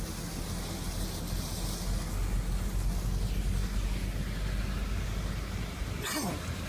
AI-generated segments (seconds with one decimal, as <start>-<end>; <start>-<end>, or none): none

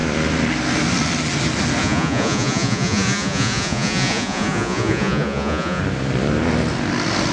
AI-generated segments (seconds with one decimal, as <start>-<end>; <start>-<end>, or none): 1.8-5.8